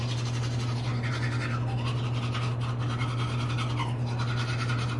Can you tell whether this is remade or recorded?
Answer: recorded